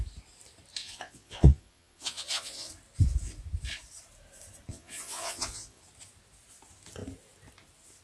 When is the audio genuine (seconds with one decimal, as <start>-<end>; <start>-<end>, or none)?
0.0-0.8; 2.7-4.7; 5.8-8.0